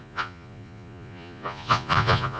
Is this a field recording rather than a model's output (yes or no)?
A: no